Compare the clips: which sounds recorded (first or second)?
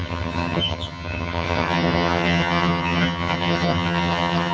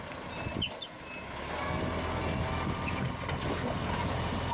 second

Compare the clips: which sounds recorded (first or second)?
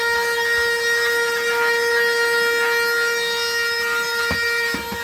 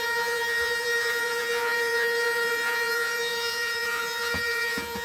first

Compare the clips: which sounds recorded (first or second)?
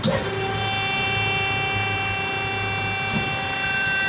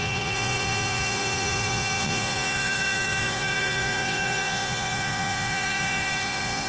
first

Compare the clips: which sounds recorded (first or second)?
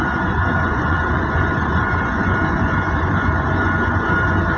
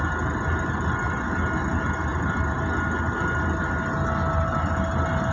second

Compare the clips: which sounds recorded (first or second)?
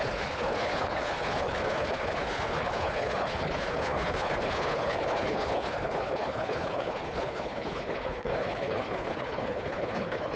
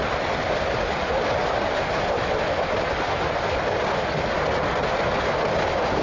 second